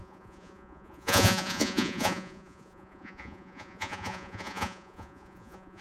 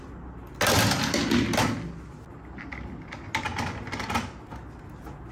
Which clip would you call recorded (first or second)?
second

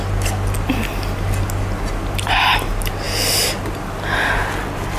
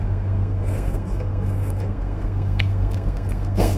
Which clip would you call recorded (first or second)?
first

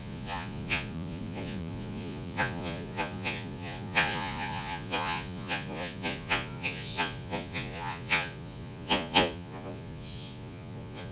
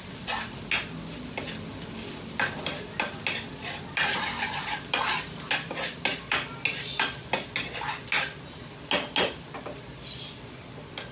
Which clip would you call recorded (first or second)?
second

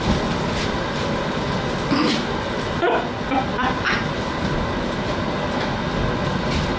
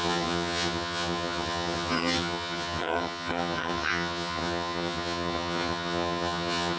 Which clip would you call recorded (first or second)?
first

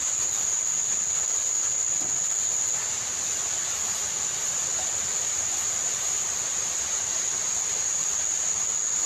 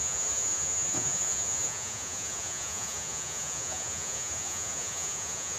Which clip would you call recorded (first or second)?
first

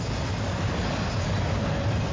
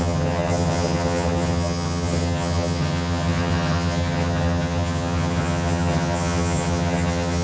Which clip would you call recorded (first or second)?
first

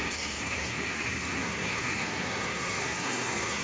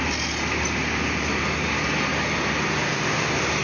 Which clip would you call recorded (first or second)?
second